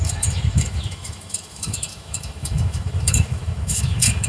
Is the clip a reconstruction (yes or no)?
yes